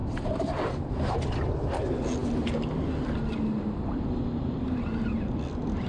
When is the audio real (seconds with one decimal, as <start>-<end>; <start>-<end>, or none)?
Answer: 0.9-5.9